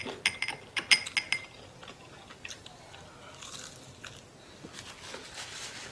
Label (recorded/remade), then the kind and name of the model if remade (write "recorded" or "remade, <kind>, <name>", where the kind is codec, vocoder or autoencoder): recorded